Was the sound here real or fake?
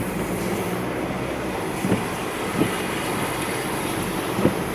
real